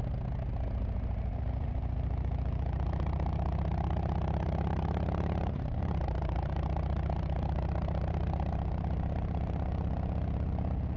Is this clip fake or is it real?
fake